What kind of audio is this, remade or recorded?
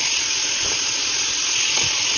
recorded